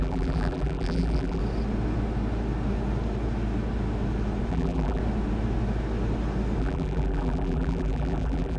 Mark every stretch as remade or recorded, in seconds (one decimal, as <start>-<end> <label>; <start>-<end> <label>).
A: 0.0-1.4 remade; 1.4-4.5 recorded; 4.5-5.0 remade; 5.0-6.6 recorded; 6.6-8.6 remade